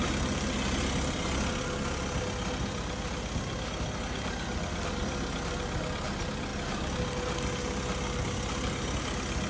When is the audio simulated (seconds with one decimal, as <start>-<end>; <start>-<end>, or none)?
none